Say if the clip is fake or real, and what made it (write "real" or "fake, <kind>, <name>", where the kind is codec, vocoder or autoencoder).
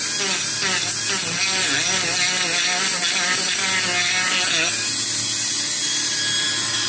real